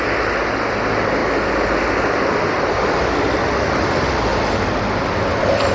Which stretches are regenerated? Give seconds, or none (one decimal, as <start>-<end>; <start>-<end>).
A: none